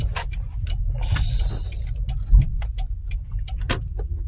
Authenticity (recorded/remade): recorded